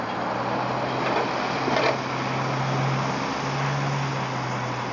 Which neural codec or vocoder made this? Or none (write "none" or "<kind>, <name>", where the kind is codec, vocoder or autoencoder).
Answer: none